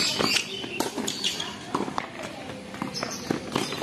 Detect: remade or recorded recorded